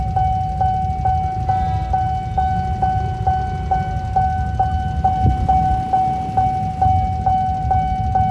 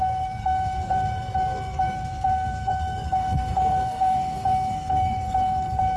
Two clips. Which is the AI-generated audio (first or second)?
second